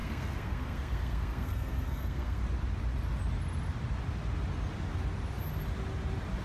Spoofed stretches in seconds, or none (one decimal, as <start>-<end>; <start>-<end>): 0.0-2.4